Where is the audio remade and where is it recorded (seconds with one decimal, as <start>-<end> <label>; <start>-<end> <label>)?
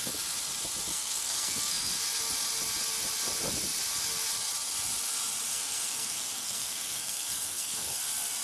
0.0-0.9 recorded; 0.9-2.0 remade; 2.0-5.5 recorded; 5.5-8.0 remade; 8.0-8.4 recorded